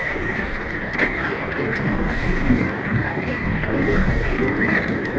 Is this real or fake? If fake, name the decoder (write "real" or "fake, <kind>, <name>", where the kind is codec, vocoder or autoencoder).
fake, codec, DAC